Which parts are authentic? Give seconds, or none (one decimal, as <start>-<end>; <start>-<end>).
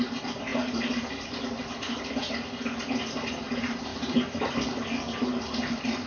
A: 0.0-6.1